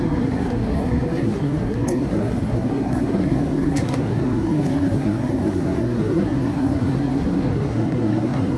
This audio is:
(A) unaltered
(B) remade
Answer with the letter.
B